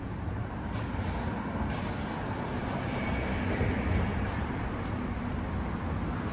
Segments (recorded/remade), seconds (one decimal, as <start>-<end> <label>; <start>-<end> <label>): 0.0-2.6 recorded; 2.6-3.1 remade; 3.1-4.1 recorded; 4.1-4.9 remade; 4.9-6.3 recorded